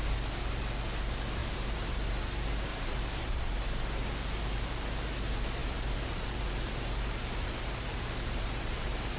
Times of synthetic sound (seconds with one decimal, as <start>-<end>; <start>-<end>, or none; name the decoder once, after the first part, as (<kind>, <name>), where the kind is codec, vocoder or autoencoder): 1.4-2.2 (vocoder, BigVGAN v2); 2.7-3.7; 5.6-9.2